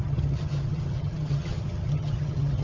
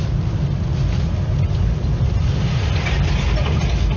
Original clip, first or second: second